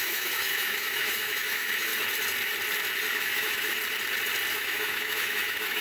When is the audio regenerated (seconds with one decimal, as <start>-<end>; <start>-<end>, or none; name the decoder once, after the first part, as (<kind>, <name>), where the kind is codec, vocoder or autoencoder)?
0.0-1.9 (autoencoder, DAC-VAE); 3.1-3.8; 4.5-5.8